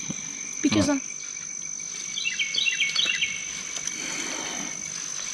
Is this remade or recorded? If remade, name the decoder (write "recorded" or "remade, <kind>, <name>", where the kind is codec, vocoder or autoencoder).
recorded